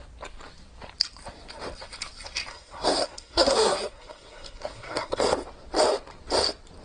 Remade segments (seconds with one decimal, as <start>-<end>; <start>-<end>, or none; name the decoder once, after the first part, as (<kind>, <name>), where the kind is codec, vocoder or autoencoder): 2.5-5.2 (codec, SNAC)